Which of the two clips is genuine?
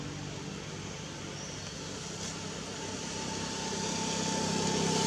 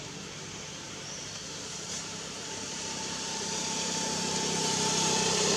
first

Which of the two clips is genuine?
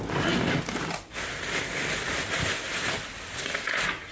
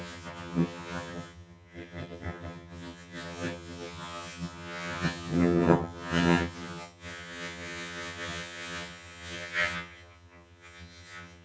first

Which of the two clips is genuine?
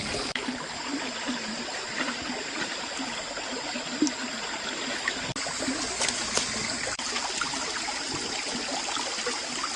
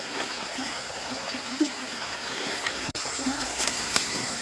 first